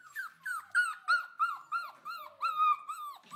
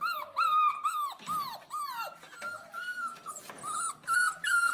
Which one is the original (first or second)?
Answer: first